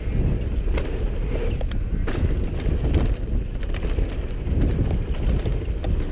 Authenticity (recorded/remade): recorded